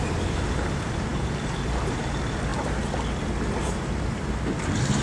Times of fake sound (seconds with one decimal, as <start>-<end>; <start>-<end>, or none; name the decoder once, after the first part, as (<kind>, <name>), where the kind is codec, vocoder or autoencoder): 0.0-2.5 (vocoder, BigVGAN v2); 3.6-5.0